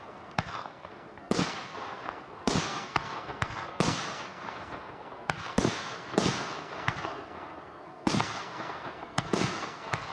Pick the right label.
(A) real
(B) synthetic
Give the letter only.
B